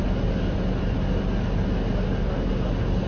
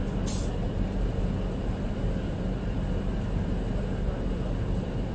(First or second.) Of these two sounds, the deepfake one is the second